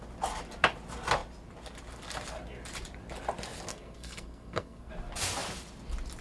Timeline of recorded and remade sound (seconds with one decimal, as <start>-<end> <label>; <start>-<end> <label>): 0.0-3.7 recorded; 3.7-4.9 remade; 4.9-6.2 recorded